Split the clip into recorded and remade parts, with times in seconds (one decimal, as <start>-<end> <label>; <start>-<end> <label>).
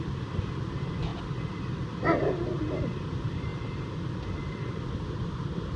0.0-3.5 remade; 3.5-4.4 recorded; 4.4-5.8 remade